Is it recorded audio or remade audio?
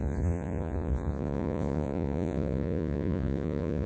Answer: remade